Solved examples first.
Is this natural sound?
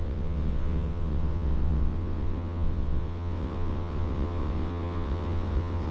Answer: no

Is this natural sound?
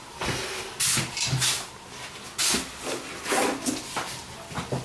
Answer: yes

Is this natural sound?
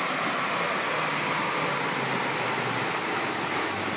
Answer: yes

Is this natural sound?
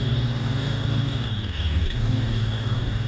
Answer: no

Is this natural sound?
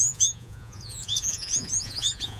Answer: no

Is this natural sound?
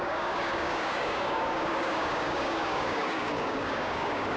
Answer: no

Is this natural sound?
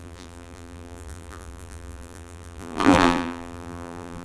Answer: no